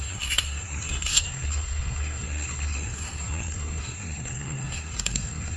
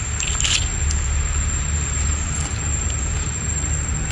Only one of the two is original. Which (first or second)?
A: second